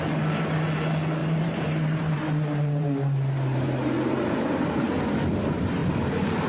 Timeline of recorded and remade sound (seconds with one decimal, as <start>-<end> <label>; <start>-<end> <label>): 0.0-1.2 recorded; 1.2-5.0 remade; 5.0-6.5 recorded